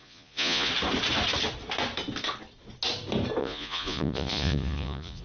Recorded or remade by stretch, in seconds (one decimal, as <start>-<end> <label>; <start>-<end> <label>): 0.0-0.7 remade; 0.7-3.4 recorded; 3.4-5.2 remade